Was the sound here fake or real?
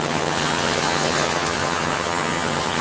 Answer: fake